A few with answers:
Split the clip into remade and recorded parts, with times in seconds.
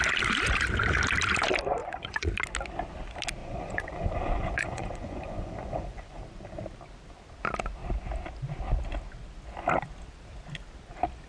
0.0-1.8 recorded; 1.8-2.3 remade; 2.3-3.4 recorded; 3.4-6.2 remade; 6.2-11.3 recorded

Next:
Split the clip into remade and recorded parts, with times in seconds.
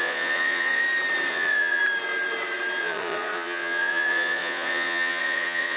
0.0-0.8 remade; 0.8-1.3 recorded; 1.3-1.8 remade; 1.8-2.8 recorded; 2.8-5.8 remade